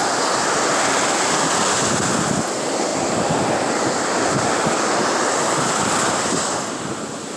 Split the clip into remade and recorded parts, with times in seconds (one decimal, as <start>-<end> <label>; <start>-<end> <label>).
0.0-7.4 recorded